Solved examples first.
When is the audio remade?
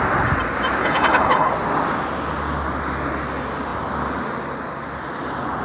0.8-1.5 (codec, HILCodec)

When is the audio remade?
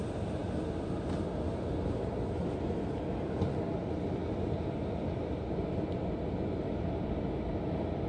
none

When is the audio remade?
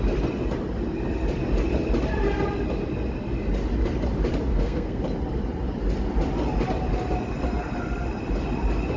4.5-5.0 (codec, SNAC)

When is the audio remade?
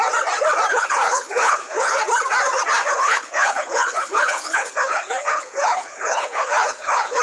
0.7-2.0 (codec, HILCodec); 2.9-7.2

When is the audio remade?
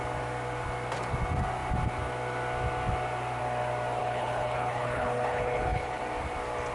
4.0-6.0 (codec, HILCodec)